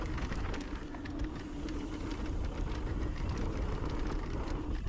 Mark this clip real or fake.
real